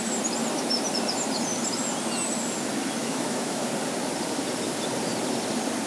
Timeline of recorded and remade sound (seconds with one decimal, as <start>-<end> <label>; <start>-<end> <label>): 0.0-3.0 recorded; 3.0-3.7 remade; 3.7-5.9 recorded